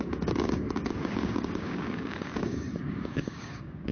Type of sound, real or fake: fake